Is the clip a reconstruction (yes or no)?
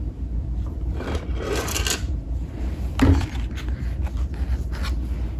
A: no